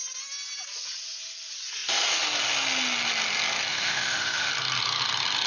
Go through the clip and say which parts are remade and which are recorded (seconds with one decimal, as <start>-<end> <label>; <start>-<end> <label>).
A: 0.0-3.7 recorded; 3.7-4.5 remade; 4.5-5.5 recorded